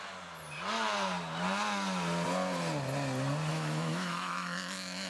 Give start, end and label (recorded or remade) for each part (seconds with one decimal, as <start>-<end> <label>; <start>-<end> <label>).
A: 0.0-3.5 recorded; 3.5-5.1 remade